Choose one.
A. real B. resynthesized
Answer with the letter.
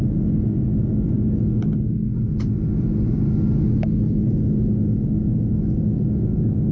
A